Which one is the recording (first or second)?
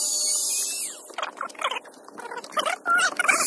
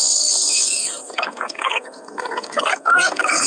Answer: first